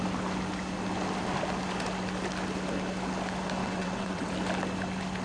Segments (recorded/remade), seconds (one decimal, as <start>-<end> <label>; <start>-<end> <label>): 0.0-3.6 recorded; 3.6-4.3 remade; 4.3-5.2 recorded